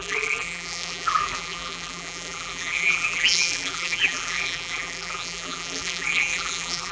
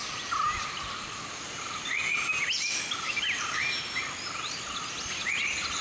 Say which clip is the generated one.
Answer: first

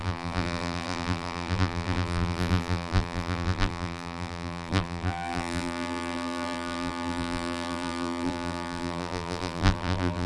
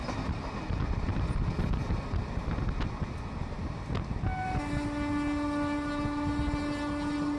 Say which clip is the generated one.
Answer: first